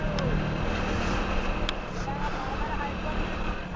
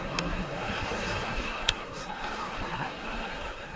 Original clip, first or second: first